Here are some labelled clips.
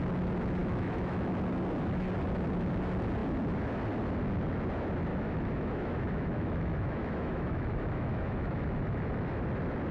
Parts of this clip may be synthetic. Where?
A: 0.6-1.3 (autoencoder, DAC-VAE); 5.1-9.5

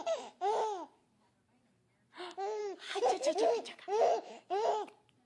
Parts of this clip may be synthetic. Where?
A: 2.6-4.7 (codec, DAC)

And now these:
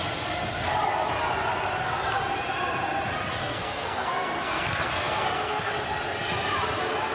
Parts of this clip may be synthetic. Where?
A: 3.4-5.7 (codec, SNAC)

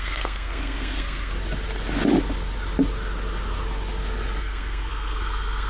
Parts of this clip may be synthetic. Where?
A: 0.0-1.3 (codec, SNAC); 4.4-5.7

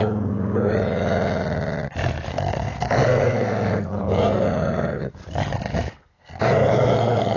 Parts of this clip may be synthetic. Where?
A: 0.0-0.7 (codec, SNAC); 2.3-5.2; 6.0-7.4